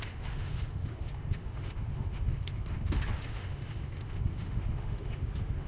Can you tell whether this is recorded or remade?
remade